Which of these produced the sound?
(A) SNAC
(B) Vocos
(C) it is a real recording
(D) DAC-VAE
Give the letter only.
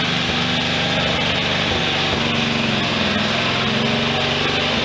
C